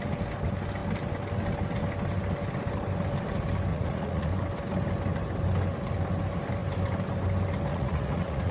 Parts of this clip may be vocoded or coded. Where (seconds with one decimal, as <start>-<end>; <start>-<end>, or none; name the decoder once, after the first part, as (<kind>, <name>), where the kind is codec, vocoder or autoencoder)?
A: 3.7-4.3 (vocoder, Vocos); 7.7-8.5